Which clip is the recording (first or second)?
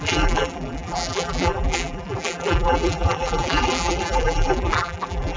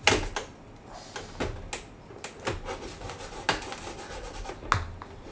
second